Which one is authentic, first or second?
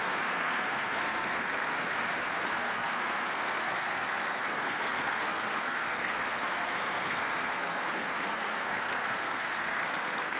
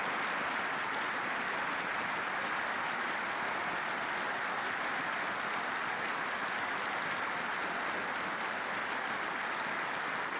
second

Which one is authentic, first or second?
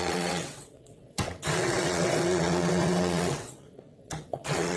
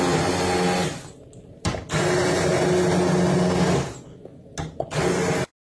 second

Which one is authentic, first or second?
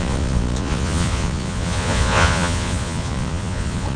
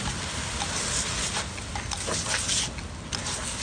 second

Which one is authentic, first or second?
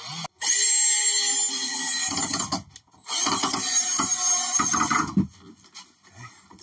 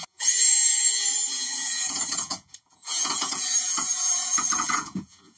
first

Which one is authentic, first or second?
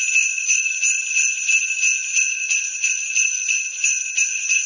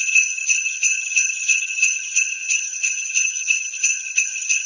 first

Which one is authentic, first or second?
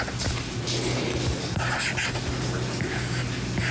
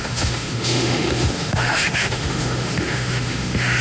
first